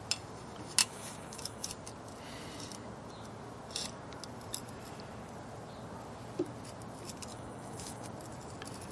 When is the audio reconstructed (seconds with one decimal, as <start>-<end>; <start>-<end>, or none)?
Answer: 0.8-1.7; 7.3-8.1